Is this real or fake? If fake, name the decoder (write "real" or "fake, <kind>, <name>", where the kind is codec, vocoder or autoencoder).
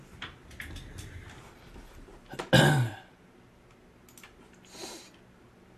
real